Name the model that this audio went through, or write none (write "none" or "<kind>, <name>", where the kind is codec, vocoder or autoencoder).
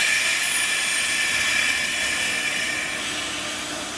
none